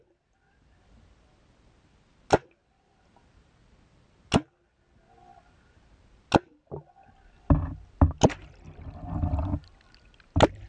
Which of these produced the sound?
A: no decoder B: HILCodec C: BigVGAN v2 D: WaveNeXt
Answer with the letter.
A